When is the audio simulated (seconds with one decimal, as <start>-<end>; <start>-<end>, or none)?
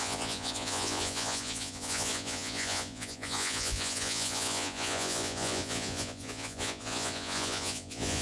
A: 0.0-8.2